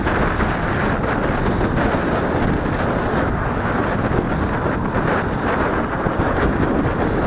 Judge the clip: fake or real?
real